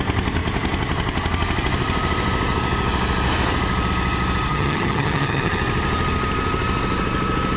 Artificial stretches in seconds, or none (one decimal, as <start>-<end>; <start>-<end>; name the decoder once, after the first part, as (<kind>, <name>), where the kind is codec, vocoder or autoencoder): 4.5-5.6 (vocoder, HiFi-GAN)